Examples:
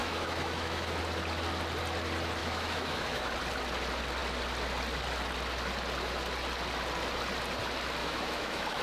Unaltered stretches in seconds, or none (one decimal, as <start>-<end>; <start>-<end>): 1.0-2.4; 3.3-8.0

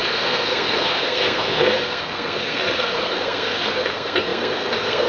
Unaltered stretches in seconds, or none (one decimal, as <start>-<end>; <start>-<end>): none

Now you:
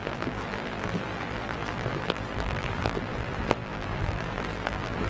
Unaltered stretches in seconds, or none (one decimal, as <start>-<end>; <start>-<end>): none

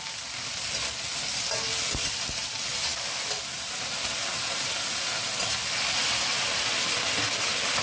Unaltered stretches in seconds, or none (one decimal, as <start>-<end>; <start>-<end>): 0.0-1.7; 3.7-7.8

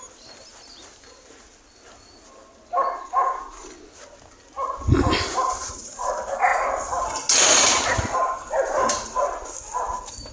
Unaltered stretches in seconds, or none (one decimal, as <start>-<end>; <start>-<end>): 0.0-10.3

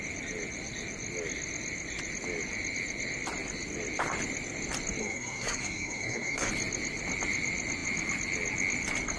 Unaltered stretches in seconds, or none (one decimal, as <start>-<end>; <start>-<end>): 0.0-5.0; 6.5-9.2

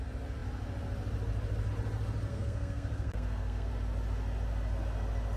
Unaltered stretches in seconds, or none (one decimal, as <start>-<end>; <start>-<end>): 0.0-2.3; 3.7-5.4

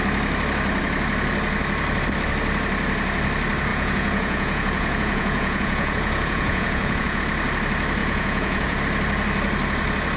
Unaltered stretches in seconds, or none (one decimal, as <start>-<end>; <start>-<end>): 0.0-3.7; 7.2-8.0; 8.8-10.2